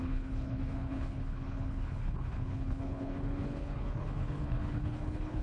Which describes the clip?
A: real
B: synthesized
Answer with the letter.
B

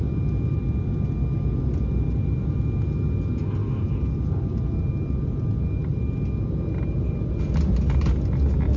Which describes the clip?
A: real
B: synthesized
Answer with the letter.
A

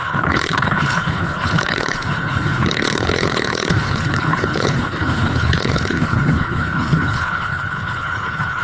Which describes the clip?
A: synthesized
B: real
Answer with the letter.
A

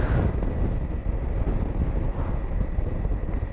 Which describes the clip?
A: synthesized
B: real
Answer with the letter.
B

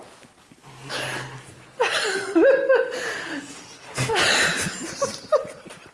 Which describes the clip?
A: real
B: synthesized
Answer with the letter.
A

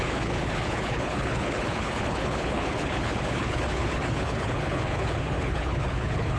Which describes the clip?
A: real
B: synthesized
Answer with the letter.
B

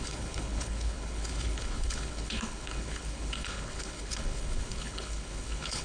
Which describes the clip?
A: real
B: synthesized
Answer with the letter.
B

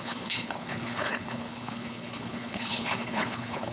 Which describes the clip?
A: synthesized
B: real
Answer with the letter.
A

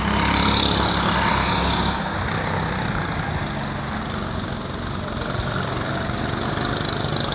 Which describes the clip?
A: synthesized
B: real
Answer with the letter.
B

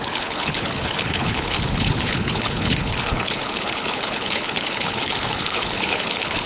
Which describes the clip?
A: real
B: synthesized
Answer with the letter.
B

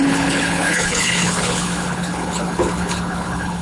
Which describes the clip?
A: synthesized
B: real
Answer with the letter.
A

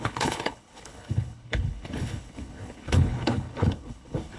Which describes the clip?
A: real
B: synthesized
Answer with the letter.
B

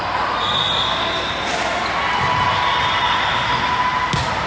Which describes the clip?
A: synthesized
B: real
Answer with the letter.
B